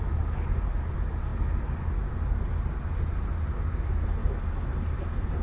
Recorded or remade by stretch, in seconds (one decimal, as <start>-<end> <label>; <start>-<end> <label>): 0.0-5.4 recorded